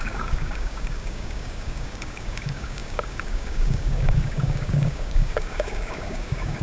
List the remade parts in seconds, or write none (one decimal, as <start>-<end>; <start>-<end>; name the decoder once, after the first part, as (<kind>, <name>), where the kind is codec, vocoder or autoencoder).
0.0-6.6 (codec, DAC)